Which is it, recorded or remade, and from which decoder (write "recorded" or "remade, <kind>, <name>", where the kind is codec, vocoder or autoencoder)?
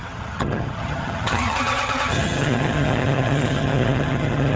remade, vocoder, HiFi-GAN